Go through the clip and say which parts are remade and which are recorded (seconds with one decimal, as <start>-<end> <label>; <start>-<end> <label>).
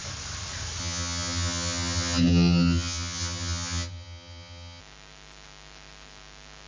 0.0-0.8 recorded; 0.8-4.8 remade; 4.8-6.7 recorded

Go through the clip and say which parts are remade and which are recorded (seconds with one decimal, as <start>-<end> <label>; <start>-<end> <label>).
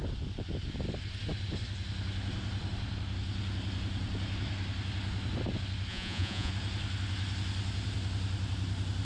0.0-5.9 recorded; 5.9-6.5 remade; 6.5-9.0 recorded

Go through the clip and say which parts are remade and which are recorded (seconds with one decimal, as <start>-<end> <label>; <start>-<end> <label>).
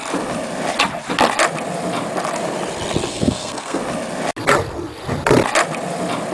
0.0-3.1 recorded; 3.1-3.8 remade; 3.8-6.3 recorded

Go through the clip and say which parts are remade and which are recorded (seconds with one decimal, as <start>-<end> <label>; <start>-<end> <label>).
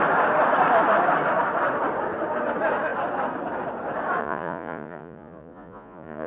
0.0-4.2 recorded; 4.2-6.3 remade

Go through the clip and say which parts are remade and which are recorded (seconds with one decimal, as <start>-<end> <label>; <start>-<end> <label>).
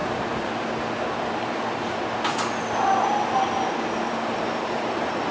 0.0-5.3 recorded